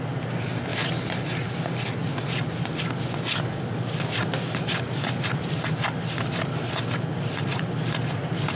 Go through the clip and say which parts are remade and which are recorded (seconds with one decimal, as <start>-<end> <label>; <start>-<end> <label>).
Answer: 0.0-8.6 recorded

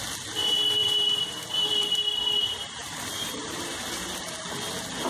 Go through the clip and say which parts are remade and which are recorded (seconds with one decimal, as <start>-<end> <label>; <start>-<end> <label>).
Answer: 0.0-0.8 recorded; 0.8-3.9 remade; 3.9-5.1 recorded

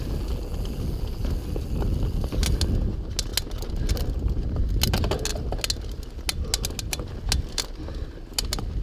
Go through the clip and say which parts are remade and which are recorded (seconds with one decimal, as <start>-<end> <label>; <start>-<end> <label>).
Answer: 0.0-8.8 recorded

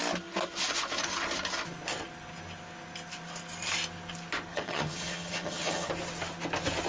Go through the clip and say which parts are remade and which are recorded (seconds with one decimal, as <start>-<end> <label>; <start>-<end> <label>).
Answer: 0.0-4.5 recorded; 4.5-5.9 remade; 5.9-6.9 recorded

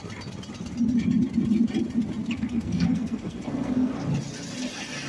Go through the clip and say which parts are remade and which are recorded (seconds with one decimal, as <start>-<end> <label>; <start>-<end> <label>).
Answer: 0.0-2.2 recorded; 2.2-3.9 remade; 3.9-5.1 recorded